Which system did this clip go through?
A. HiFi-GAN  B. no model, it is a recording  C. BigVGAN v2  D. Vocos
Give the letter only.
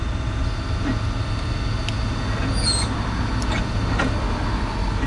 B